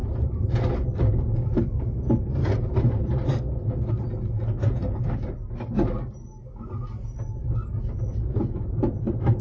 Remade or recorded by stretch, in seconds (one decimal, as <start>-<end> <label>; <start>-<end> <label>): 0.0-1.6 remade; 1.6-7.4 recorded; 7.4-9.0 remade; 9.0-9.4 recorded